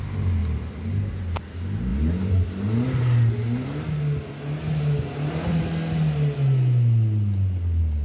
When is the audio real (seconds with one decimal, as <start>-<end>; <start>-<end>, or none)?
0.0-8.0